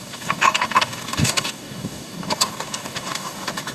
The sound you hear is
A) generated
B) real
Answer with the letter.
A